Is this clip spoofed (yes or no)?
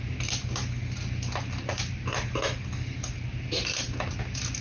no